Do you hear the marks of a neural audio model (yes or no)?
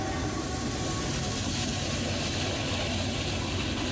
no